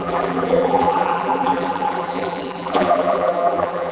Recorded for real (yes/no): no